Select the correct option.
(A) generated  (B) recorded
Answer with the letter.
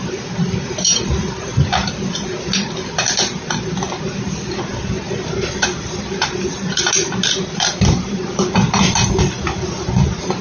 B